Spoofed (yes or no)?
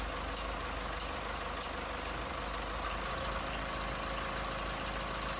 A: no